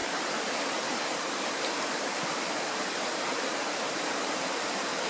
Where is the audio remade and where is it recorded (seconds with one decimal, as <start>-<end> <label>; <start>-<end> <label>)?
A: 0.0-5.1 remade